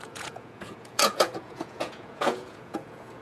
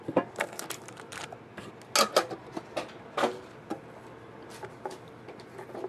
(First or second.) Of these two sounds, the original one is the second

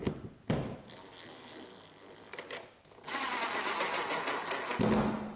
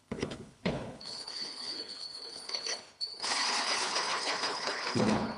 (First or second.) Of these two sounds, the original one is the first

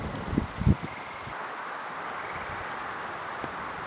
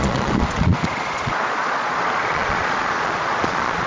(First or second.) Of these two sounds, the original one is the first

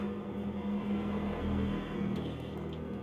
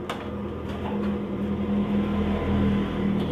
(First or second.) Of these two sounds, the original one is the second